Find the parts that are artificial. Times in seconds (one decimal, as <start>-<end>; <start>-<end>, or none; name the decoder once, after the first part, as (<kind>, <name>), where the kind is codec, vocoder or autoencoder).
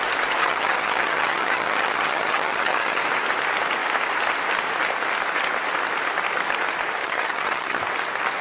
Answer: 0.4-3.0 (vocoder, HiFi-GAN); 7.0-7.8